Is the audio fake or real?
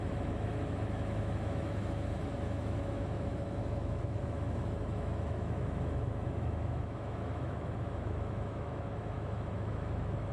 fake